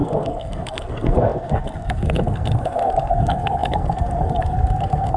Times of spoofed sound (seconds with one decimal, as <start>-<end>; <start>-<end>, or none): 0.0-5.2